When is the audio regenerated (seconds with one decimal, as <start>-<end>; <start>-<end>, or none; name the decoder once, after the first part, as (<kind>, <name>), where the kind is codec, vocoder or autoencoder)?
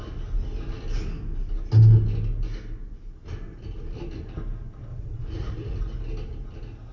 4.9-5.8 (vocoder, Vocos)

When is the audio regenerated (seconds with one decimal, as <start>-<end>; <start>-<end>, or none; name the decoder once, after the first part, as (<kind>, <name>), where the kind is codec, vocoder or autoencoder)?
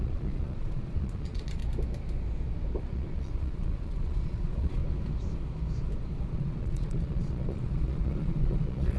0.0-1.6 (vocoder, Vocos); 2.8-4.8; 6.2-9.0